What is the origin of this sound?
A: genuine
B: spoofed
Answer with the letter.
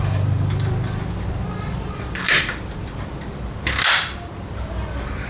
B